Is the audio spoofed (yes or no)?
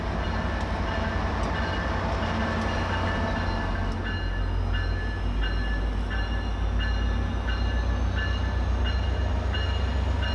no